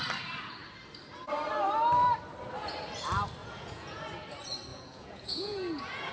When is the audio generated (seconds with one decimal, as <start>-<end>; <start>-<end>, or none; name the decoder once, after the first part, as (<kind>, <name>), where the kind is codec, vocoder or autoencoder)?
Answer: 3.4-4.0 (vocoder, Vocos); 4.7-6.1

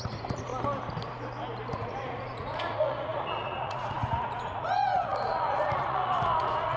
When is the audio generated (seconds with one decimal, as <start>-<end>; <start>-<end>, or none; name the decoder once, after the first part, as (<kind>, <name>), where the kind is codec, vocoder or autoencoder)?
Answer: 0.0-0.5 (vocoder, Vocos); 1.7-6.8

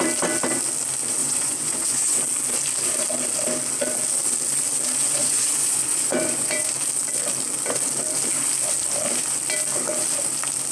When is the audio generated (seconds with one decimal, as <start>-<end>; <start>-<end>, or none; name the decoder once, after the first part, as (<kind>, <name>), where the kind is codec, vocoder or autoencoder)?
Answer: 1.2-2.2 (vocoder, Vocos); 5.0-6.7

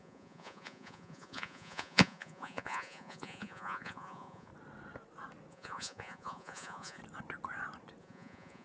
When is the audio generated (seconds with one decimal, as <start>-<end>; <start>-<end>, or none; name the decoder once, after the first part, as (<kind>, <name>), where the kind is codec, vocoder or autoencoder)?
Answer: 0.0-4.5 (vocoder, Vocos); 5.5-7.0; 8.0-8.6

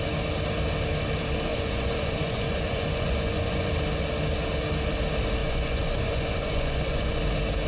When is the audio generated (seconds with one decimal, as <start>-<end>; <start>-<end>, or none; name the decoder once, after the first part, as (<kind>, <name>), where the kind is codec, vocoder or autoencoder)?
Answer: 1.5-3.7 (vocoder, Vocos); 5.4-7.2